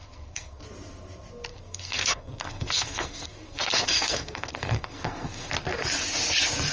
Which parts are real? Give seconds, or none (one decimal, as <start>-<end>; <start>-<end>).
0.6-1.5; 5.5-6.7